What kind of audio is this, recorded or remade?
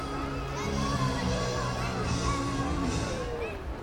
recorded